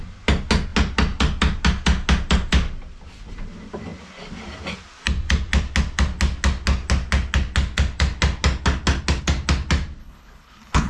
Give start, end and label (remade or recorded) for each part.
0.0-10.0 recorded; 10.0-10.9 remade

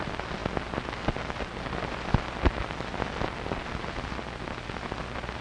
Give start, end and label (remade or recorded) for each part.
0.0-5.4 recorded